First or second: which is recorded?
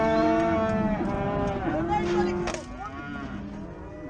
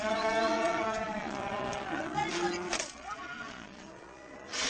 first